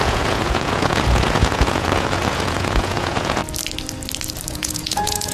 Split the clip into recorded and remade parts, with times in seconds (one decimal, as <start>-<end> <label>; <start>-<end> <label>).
0.0-3.4 remade; 3.4-4.5 recorded; 4.5-5.3 remade